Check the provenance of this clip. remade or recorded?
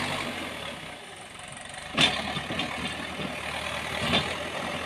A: recorded